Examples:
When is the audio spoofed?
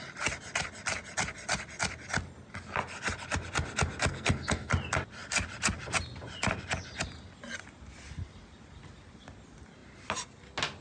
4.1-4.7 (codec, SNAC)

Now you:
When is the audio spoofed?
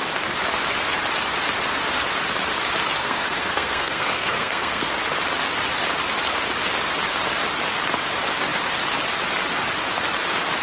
3.0-4.9 (codec, SNAC)